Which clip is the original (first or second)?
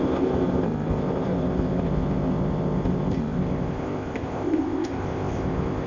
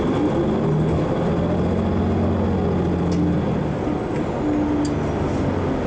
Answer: second